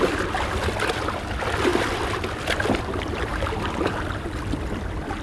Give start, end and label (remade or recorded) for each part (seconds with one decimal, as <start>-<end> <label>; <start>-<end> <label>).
0.0-5.2 recorded